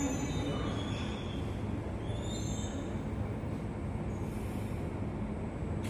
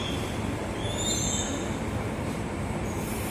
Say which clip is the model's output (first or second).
second